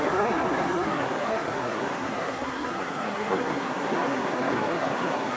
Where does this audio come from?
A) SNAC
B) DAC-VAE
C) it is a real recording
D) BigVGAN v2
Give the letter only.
A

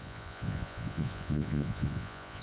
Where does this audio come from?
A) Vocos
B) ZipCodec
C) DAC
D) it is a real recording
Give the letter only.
A